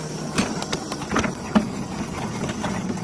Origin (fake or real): real